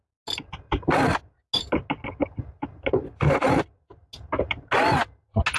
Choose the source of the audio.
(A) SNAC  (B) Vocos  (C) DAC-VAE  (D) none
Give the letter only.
D